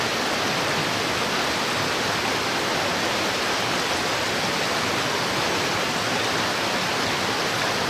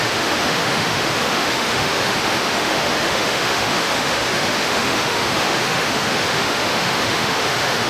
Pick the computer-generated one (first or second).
second